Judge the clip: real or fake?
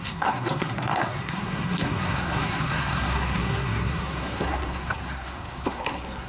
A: fake